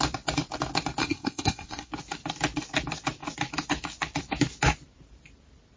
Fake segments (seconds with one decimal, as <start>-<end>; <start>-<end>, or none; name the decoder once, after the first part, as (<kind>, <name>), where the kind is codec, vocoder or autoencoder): 1.0-1.9 (codec, SNAC)